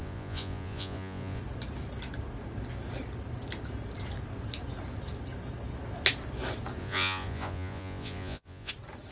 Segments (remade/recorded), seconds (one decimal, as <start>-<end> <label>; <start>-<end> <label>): 0.0-1.4 remade; 1.4-6.8 recorded; 6.8-8.7 remade; 8.7-9.1 recorded